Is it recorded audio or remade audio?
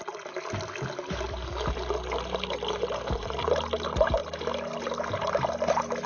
recorded